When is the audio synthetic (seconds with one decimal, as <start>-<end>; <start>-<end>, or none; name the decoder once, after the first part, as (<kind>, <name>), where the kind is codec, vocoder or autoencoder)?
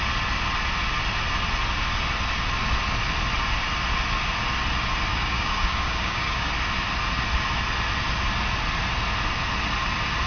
5.1-6.5 (codec, DAC)